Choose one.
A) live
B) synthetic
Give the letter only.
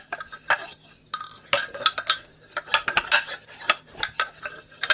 A